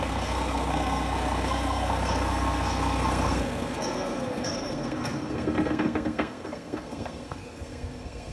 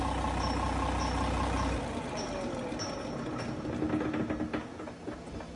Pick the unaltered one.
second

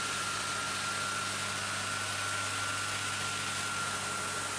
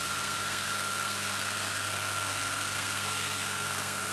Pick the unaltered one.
first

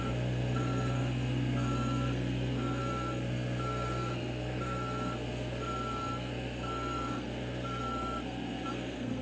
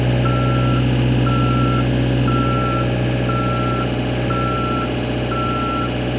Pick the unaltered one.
second